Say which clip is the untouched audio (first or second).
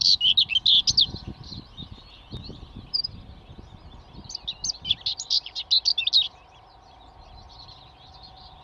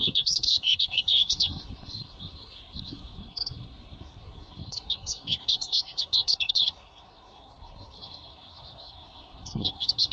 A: first